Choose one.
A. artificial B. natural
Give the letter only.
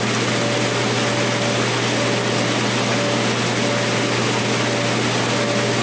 B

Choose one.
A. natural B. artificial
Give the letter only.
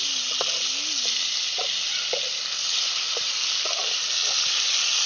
A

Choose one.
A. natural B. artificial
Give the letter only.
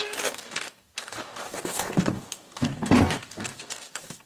B